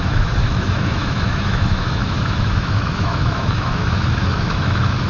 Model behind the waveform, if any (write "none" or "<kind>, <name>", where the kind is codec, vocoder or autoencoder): autoencoder, DAC-VAE